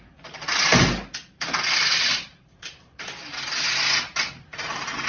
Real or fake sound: real